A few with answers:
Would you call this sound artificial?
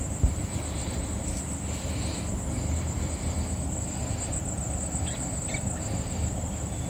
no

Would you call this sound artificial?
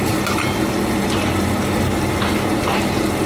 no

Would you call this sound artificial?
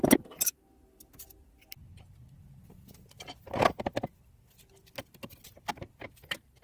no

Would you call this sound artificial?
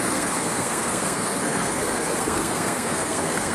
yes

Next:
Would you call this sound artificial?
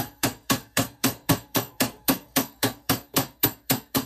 yes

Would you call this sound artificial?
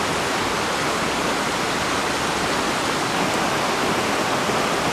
no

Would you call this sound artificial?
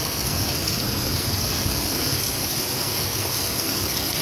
yes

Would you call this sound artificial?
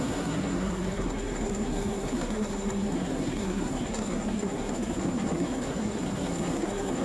yes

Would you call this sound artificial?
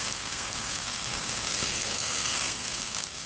yes